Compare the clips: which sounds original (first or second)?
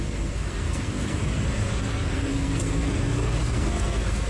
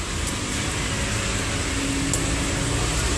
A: second